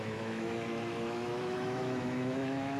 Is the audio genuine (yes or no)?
no